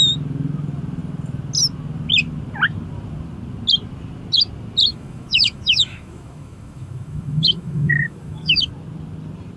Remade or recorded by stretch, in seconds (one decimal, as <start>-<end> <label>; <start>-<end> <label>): 0.0-4.9 recorded; 4.9-8.7 remade; 8.7-9.6 recorded